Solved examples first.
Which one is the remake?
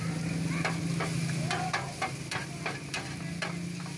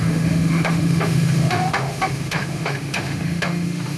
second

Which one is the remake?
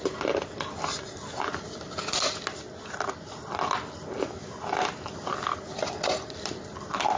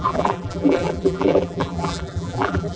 second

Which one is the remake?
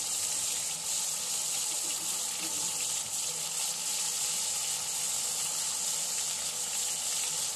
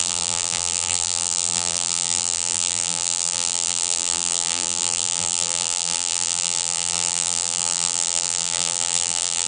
second